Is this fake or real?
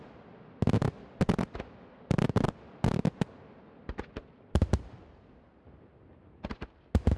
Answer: real